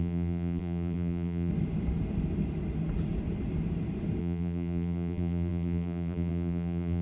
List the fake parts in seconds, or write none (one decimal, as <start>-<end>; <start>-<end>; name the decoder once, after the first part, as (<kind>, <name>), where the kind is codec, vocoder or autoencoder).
0.0-1.5 (vocoder, BigVGAN v2); 4.2-7.0